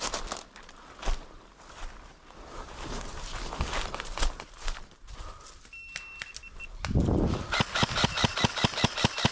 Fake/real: real